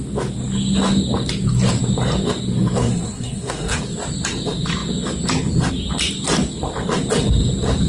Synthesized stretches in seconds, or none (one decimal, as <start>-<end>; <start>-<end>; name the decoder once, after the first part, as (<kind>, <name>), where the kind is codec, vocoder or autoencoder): 2.8-3.8 (codec, SNAC)